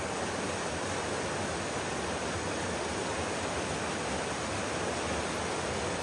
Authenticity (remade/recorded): recorded